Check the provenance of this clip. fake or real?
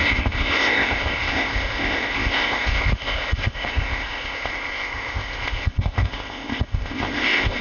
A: fake